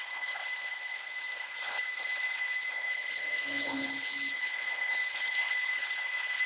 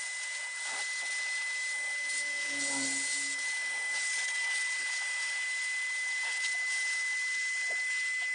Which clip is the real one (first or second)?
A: second